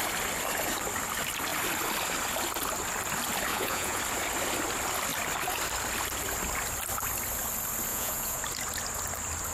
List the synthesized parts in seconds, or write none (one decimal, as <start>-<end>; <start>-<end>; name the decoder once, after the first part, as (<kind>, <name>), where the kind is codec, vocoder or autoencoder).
3.5-4.0 (vocoder, Vocos); 7.9-8.4

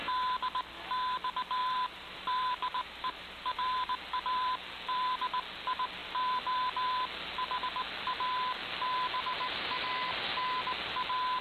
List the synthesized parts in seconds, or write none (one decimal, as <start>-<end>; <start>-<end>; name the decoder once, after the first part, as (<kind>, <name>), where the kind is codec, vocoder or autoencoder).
1.6-4.0 (vocoder, BigVGAN v2)

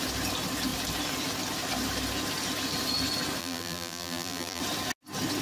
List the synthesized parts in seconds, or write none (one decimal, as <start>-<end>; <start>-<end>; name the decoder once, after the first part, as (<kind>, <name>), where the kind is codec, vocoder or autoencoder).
3.4-4.6 (vocoder, BigVGAN v2)

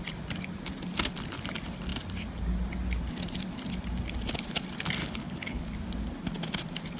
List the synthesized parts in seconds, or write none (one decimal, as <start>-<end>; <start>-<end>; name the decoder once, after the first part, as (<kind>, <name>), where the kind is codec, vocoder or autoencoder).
5.0-5.6 (codec, HILCodec)